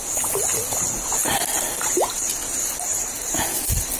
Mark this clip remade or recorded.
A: recorded